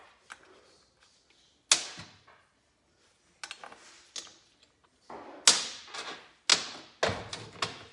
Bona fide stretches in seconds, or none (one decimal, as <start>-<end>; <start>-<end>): 0.0-7.9